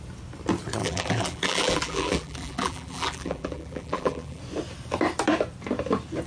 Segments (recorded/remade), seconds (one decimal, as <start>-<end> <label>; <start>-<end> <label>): 0.0-0.8 recorded; 0.8-4.4 remade; 4.4-6.3 recorded